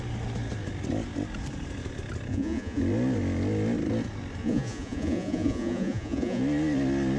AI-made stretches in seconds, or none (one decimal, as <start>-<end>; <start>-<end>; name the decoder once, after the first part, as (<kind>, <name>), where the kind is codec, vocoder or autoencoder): 2.3-2.8 (vocoder, Vocos); 4.4-6.4